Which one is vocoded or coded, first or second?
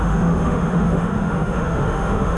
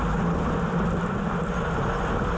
first